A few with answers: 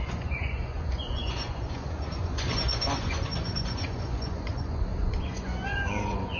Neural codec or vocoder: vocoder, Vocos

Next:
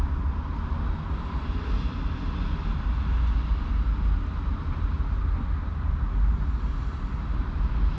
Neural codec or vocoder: none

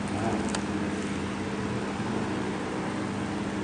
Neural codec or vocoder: none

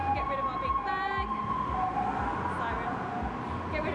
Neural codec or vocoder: none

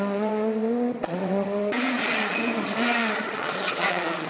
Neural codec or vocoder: vocoder, Vocos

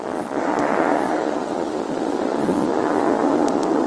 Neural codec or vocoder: vocoder, Vocos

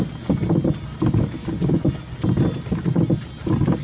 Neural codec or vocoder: none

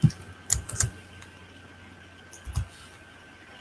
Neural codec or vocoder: none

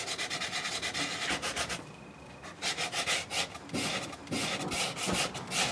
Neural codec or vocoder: none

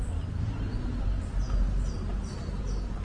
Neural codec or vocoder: none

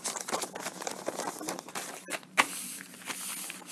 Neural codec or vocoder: none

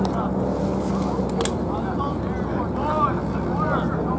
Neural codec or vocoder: none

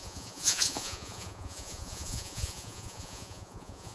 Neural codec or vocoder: vocoder, Vocos